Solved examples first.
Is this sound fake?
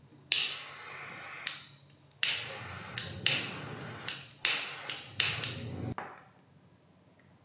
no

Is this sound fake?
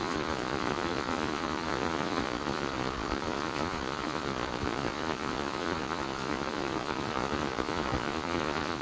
yes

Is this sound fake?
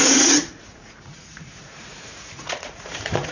yes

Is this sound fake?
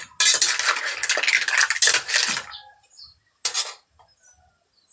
no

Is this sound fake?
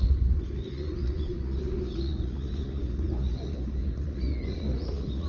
yes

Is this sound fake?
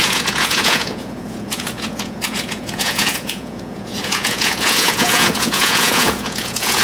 yes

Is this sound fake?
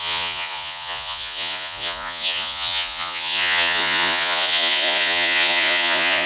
yes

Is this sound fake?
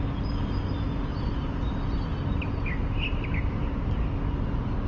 no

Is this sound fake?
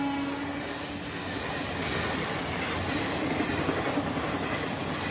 no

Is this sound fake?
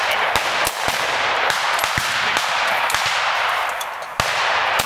no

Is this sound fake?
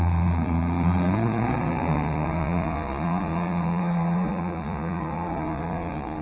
yes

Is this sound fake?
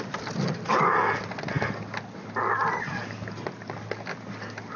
no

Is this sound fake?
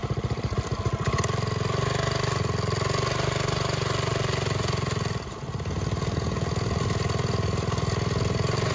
no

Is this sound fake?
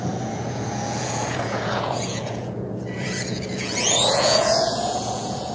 yes